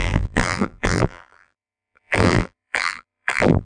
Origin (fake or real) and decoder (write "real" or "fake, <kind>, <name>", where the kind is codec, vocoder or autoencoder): fake, vocoder, BigVGAN v2